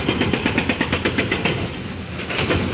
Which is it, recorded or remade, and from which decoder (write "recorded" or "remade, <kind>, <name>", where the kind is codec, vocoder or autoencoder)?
remade, vocoder, BigVGAN v2